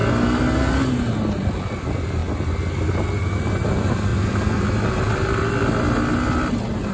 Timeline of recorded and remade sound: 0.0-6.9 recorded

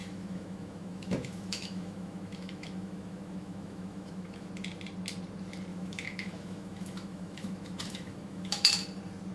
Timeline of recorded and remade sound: 0.0-4.5 remade; 4.5-5.7 recorded; 5.7-8.7 remade; 8.7-9.3 recorded

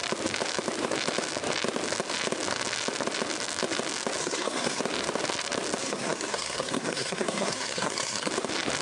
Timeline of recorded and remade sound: 0.0-4.2 recorded; 4.2-4.8 remade; 4.8-5.8 recorded; 5.8-8.3 remade; 8.3-8.8 recorded